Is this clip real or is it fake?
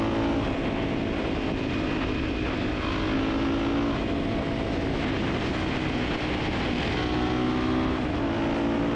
real